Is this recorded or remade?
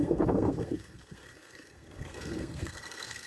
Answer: remade